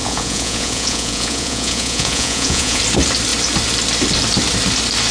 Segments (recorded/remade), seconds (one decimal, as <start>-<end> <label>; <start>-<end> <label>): 0.0-2.8 remade; 2.8-5.1 recorded